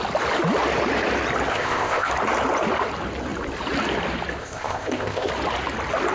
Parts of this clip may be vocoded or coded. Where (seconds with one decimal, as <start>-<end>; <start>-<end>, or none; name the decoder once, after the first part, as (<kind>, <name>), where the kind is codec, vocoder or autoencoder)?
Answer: 1.5-2.1 (codec, ZipCodec); 4.4-5.3